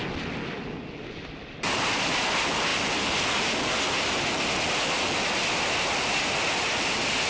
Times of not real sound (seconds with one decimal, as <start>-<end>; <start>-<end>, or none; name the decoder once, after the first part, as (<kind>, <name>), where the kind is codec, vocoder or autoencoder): none